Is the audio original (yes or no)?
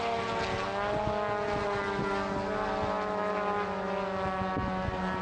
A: yes